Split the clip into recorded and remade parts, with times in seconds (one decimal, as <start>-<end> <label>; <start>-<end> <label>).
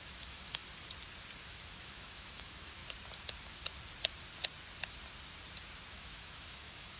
0.0-0.6 remade; 0.6-1.4 recorded; 1.4-2.8 remade; 2.8-5.9 recorded; 5.9-7.0 remade